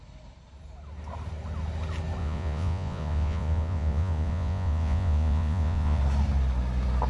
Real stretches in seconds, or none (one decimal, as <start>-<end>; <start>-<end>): 0.0-2.2; 6.0-7.1